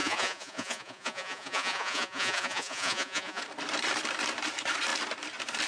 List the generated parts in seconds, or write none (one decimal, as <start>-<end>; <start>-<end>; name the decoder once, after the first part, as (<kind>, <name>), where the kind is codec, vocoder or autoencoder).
0.0-3.4 (vocoder, Vocos)